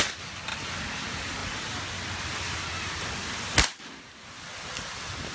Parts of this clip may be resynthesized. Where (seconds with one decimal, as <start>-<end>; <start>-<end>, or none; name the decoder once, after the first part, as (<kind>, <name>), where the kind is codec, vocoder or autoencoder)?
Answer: 0.5-1.0 (vocoder, BigVGAN v2); 1.4-4.4